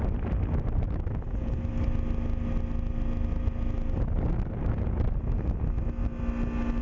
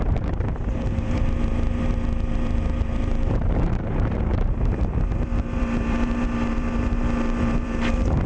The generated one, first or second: second